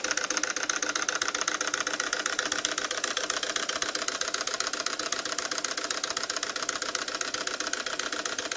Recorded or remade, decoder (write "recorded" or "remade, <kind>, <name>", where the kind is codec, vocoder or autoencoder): recorded